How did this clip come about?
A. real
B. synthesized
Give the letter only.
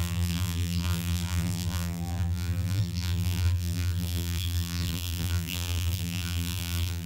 B